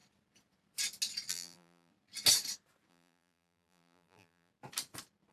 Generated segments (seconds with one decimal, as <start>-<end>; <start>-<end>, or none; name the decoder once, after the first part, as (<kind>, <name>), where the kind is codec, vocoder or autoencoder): 1.3-1.9 (vocoder, BigVGAN v2); 2.9-4.5